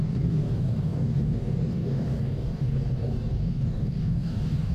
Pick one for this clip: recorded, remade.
remade